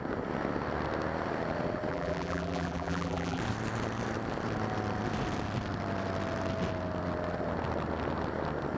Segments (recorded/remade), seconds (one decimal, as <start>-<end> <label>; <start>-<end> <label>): 0.0-1.9 recorded; 1.9-3.4 remade; 3.4-8.8 recorded